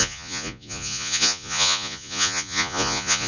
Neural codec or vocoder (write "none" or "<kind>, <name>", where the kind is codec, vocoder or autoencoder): vocoder, Vocos